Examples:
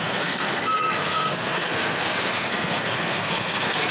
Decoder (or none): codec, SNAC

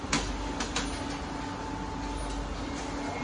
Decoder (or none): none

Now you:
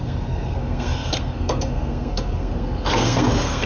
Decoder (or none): codec, SNAC